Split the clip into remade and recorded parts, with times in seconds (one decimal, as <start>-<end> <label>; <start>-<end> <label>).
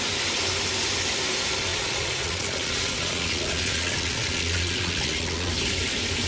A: 0.0-1.7 recorded; 1.7-5.5 remade; 5.5-6.3 recorded